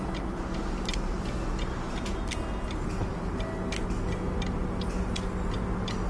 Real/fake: real